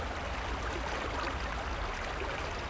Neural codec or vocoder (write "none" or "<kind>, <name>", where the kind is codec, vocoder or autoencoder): none